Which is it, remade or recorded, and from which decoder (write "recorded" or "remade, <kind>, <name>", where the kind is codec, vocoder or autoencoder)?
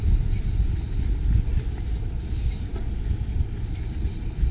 recorded